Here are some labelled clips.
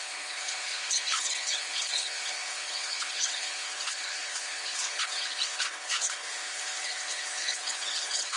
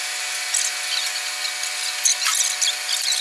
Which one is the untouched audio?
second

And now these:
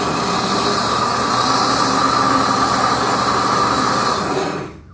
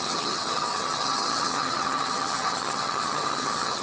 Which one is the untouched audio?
first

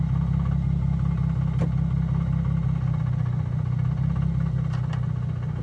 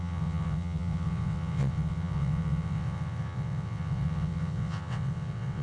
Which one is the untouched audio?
first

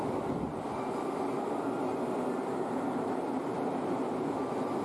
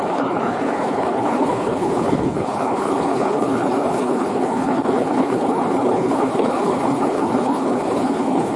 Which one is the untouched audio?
first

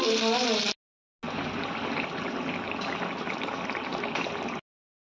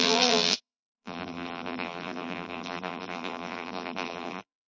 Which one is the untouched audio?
first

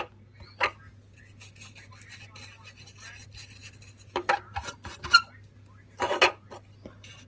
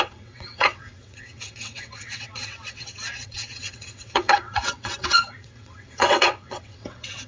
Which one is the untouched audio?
first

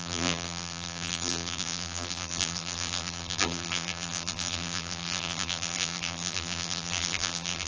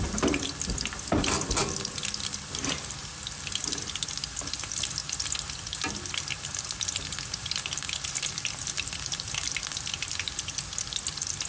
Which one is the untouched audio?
second